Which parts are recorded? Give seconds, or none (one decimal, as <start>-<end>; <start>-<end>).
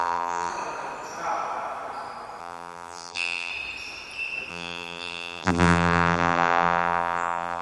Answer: 0.5-2.4; 3.5-4.5